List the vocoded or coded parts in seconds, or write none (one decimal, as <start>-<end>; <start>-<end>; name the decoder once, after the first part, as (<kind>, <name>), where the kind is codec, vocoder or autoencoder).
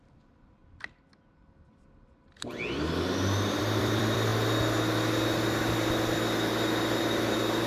0.0-0.6 (vocoder, BigVGAN v2); 3.6-4.3; 7.0-7.7